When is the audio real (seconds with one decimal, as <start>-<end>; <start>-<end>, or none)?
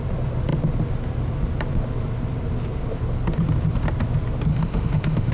0.0-4.5